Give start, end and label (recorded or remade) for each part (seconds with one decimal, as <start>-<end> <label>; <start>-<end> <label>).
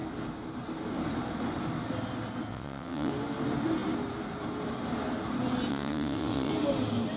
0.0-2.5 recorded; 2.5-3.1 remade; 3.1-5.7 recorded; 5.7-6.5 remade; 6.5-7.2 recorded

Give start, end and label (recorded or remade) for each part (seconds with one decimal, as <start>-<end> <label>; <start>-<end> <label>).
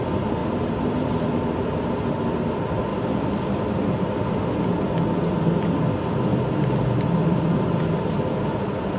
0.0-0.4 recorded; 0.4-1.8 remade; 1.8-2.9 recorded; 2.9-4.1 remade; 4.1-6.3 recorded; 6.3-7.4 remade; 7.4-9.0 recorded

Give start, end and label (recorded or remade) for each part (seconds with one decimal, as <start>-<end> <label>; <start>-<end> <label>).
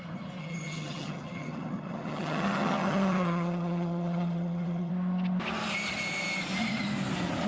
0.0-0.4 recorded; 0.4-4.9 remade; 4.9-7.5 recorded